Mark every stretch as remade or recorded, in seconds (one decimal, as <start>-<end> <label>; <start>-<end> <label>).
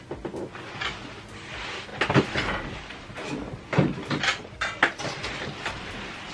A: 0.0-1.9 recorded; 1.9-3.4 remade; 3.4-4.3 recorded; 4.3-6.3 remade